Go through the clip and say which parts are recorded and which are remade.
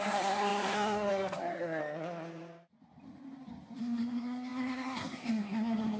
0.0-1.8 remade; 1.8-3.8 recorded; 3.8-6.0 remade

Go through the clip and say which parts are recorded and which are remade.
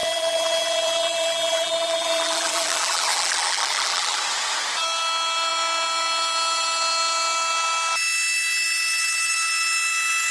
0.0-4.2 remade; 4.2-10.3 recorded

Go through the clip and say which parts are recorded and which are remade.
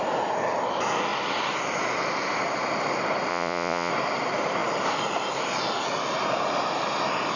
0.0-3.3 recorded; 3.3-3.9 remade; 3.9-7.4 recorded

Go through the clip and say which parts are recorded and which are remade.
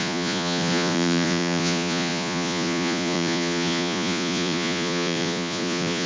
0.0-6.1 remade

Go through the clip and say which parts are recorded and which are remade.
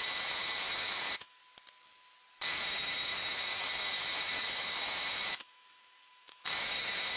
0.0-1.4 remade; 1.4-2.5 recorded; 2.5-7.2 remade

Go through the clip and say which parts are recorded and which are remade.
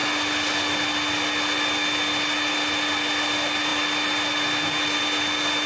0.0-5.7 recorded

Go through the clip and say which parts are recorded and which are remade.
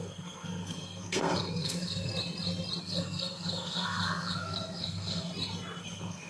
0.0-2.1 remade; 2.1-2.8 recorded; 2.8-5.3 remade; 5.3-5.8 recorded; 5.8-6.3 remade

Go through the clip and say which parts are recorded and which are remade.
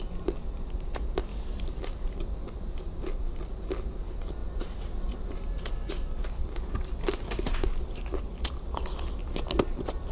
0.0-1.3 recorded; 1.3-1.9 remade; 1.9-10.1 recorded